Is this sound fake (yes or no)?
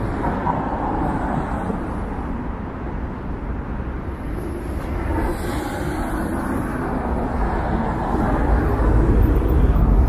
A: no